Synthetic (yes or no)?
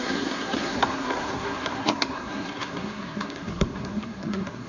yes